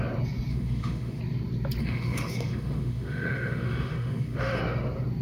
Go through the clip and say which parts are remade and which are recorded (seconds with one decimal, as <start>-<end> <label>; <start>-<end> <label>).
0.0-0.5 recorded; 0.5-1.2 remade; 1.2-1.8 recorded; 1.8-4.6 remade; 4.6-5.2 recorded